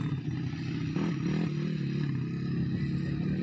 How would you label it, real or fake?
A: real